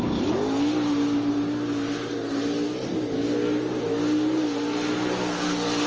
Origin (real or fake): real